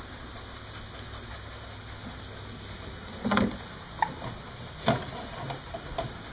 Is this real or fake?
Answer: real